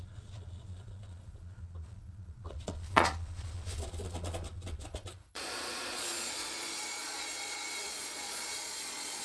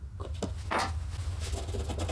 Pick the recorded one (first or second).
second